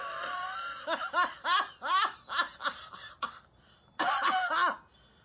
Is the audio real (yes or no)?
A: yes